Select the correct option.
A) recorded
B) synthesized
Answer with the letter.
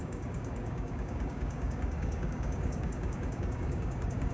B